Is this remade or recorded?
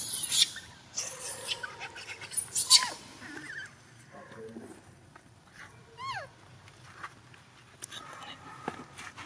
recorded